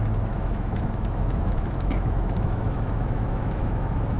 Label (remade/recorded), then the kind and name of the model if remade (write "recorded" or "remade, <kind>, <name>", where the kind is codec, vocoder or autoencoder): remade, autoencoder, DAC-VAE